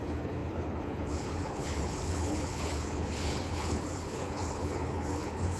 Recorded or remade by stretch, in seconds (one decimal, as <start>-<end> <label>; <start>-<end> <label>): 0.0-5.6 remade